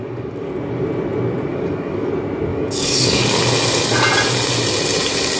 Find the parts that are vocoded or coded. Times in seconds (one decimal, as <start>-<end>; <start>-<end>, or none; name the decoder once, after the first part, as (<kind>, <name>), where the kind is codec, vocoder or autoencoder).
0.0-0.5 (codec, DAC); 1.5-2.1; 2.5-3.4